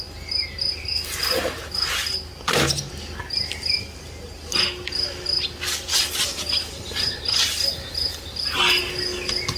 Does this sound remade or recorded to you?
recorded